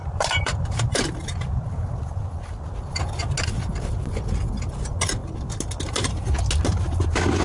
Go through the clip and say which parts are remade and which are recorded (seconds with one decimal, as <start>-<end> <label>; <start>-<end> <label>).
0.0-1.4 remade; 1.4-7.4 recorded